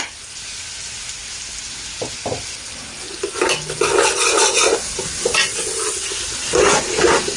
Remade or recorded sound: recorded